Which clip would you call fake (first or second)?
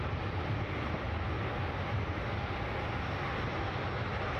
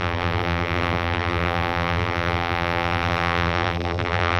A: second